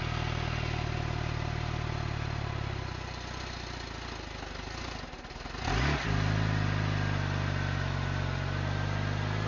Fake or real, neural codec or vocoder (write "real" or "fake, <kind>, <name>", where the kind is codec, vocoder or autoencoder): real